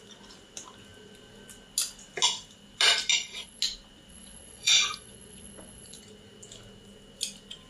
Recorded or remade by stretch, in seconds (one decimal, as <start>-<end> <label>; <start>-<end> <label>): 0.0-3.1 recorded; 3.1-3.6 remade; 3.6-4.1 recorded; 4.1-6.0 remade; 6.0-7.7 recorded

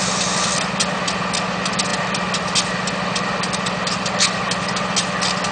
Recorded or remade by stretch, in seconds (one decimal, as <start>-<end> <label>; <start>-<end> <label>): 0.0-5.5 recorded

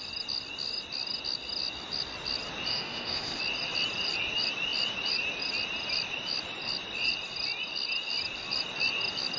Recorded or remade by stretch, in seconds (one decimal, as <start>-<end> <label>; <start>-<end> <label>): 0.0-2.7 recorded; 2.7-3.4 remade; 3.4-9.4 recorded

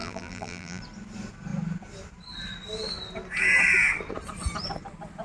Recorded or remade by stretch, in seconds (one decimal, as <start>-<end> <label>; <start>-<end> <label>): 0.0-0.8 remade; 0.8-5.2 recorded